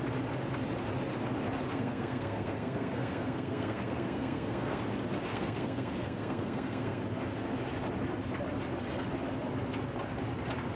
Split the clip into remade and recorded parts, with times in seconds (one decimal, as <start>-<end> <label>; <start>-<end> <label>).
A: 0.0-1.7 recorded; 1.7-4.8 remade; 4.8-5.3 recorded; 5.3-7.0 remade; 7.0-10.8 recorded